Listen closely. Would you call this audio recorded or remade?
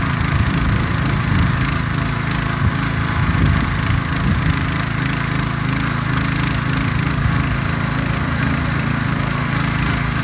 recorded